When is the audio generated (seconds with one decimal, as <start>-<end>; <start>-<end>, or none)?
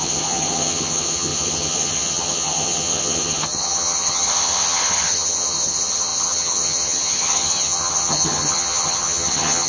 0.0-9.7